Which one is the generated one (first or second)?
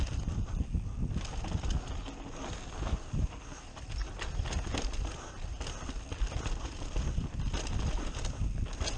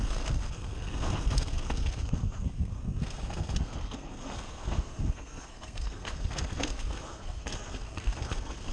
second